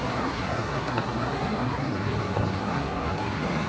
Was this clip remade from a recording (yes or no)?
yes